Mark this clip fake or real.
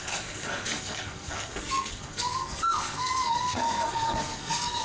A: fake